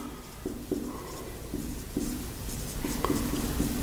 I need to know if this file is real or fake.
real